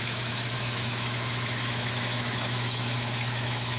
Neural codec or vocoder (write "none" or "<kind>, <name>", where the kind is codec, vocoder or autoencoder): autoencoder, DAC-VAE